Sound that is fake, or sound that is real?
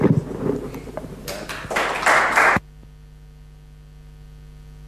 real